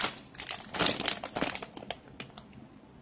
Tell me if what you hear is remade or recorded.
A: recorded